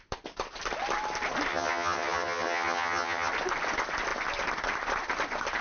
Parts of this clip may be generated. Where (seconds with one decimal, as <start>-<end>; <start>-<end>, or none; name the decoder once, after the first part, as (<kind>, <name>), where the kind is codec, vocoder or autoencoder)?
1.5-3.3 (vocoder, HiFi-GAN)